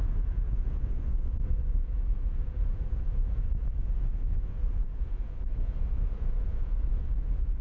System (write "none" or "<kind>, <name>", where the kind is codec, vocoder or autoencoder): vocoder, Vocos